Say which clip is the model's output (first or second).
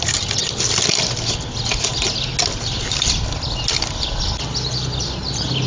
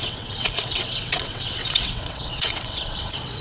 second